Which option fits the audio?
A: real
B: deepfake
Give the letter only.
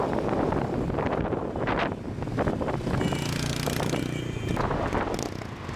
A